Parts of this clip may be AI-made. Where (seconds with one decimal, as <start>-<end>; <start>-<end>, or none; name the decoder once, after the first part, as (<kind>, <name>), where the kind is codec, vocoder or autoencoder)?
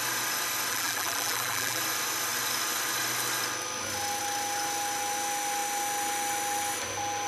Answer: 0.7-1.8 (vocoder, BigVGAN v2)